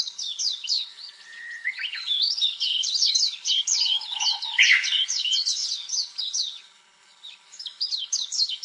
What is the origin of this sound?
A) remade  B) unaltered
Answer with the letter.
A